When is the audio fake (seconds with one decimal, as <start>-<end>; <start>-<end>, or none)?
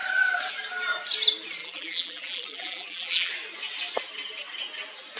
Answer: 1.6-3.3